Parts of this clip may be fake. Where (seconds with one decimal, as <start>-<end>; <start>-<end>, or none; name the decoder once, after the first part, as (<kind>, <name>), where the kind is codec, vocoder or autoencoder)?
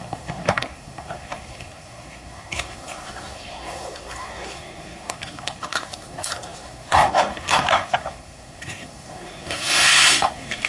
0.0-10.7 (codec, SNAC)